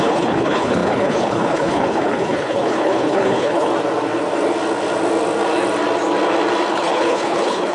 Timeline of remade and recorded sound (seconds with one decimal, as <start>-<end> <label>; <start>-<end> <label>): 0.0-3.7 remade; 3.7-6.7 recorded; 6.7-7.7 remade